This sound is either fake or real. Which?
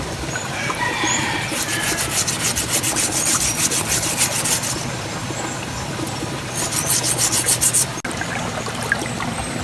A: real